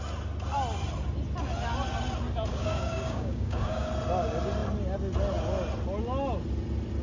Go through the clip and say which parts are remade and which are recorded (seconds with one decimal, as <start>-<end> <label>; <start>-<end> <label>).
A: 0.0-2.5 recorded; 2.5-3.9 remade; 3.9-7.0 recorded